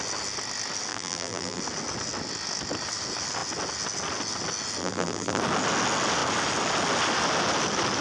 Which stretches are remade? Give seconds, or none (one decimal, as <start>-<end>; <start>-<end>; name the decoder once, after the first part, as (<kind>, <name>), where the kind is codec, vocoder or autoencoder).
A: 0.9-1.6 (vocoder, BigVGAN v2); 4.8-5.4